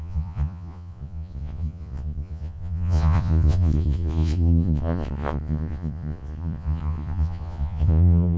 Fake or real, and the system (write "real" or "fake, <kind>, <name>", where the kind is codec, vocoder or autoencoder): fake, vocoder, Vocos